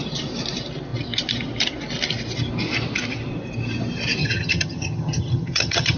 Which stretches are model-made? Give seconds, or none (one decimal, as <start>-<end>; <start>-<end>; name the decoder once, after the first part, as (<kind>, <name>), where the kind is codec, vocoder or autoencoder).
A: 4.2-6.0 (vocoder, HiFi-GAN)